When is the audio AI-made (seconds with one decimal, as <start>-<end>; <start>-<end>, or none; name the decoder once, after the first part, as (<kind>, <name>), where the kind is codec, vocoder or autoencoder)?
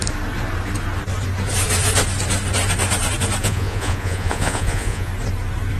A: 3.4-5.1 (vocoder, Vocos)